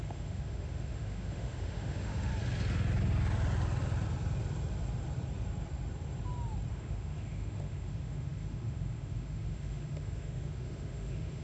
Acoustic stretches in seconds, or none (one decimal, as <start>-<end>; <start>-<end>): 2.3-6.7